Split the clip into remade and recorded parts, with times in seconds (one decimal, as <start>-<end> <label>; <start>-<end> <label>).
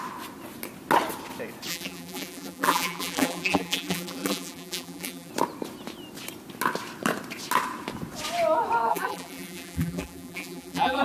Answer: 0.0-1.7 recorded; 1.7-5.3 remade; 5.3-8.9 recorded; 8.9-11.0 remade